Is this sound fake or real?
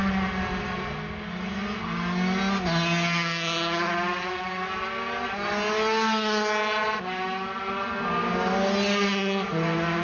real